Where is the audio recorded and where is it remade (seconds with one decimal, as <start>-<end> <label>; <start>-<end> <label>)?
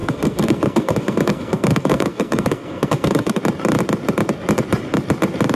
0.0-3.4 remade; 3.4-5.6 recorded